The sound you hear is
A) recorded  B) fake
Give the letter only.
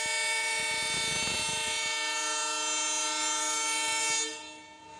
A